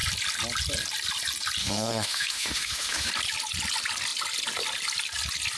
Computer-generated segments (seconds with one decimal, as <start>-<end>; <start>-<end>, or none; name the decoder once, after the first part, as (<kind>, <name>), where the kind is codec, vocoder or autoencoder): 1.6-3.1 (autoencoder, DAC-VAE)